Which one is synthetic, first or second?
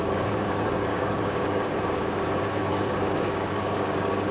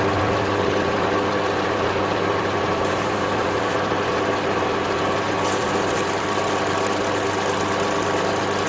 first